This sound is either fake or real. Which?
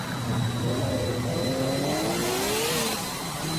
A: real